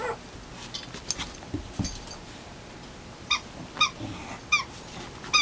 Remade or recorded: recorded